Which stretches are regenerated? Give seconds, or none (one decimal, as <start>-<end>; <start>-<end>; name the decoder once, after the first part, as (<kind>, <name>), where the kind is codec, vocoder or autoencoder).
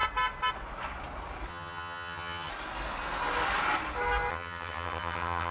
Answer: 1.5-2.5 (vocoder, HiFi-GAN); 4.3-5.5